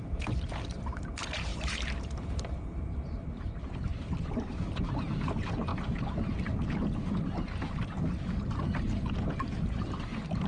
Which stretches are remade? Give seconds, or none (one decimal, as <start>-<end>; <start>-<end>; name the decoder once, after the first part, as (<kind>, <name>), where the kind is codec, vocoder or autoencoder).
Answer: 0.0-5.7 (vocoder, BigVGAN v2); 9.6-10.5